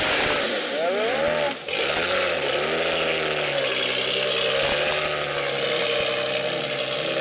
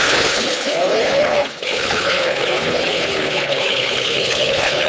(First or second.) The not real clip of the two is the second